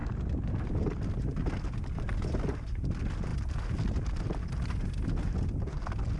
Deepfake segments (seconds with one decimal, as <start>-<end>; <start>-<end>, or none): none